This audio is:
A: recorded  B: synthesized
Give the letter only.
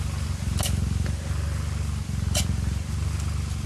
A